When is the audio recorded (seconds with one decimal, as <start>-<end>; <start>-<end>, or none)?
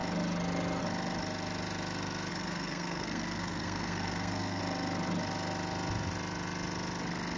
0.0-2.3; 4.6-7.4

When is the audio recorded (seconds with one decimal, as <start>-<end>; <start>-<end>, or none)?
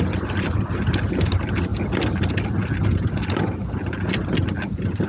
0.0-5.1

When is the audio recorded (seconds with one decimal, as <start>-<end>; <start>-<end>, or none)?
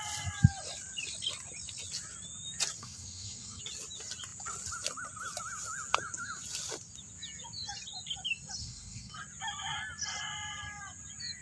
0.0-2.8; 3.6-8.6; 9.1-11.4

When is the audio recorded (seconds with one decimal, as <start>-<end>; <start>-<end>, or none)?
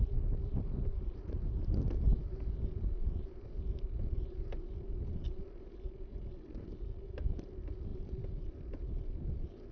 0.0-9.7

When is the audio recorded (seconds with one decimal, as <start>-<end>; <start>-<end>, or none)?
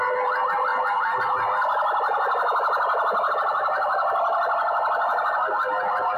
0.0-6.2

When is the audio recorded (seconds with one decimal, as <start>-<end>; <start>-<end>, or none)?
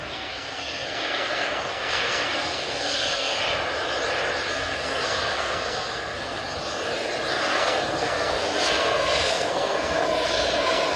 3.3-4.5; 6.4-7.3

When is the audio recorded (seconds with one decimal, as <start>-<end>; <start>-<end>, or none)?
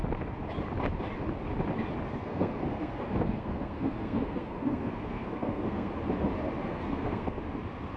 0.0-2.1; 5.9-6.6; 7.4-8.0